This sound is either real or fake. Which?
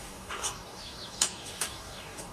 fake